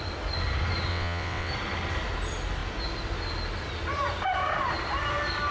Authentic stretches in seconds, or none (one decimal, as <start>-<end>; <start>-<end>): 0.0-0.9; 1.5-5.5